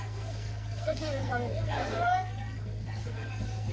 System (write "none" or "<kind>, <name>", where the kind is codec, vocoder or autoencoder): codec, SNAC